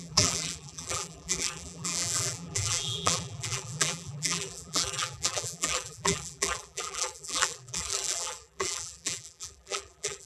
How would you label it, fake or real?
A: fake